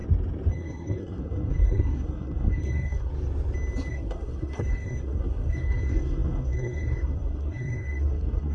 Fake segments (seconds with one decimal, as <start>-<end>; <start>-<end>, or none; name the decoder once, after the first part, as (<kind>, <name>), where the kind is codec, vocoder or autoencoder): 0.5-3.1 (codec, SNAC); 3.9-8.5